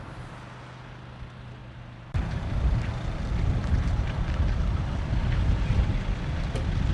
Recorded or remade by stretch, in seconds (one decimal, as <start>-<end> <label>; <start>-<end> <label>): 0.0-1.6 recorded; 1.6-2.9 remade; 2.9-3.6 recorded; 3.6-4.2 remade; 4.2-6.9 recorded